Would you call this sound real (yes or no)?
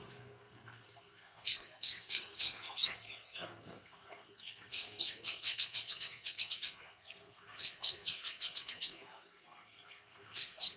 no